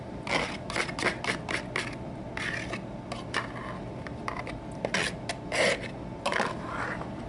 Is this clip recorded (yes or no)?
yes